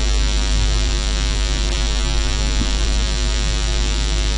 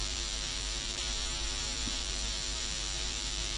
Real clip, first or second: first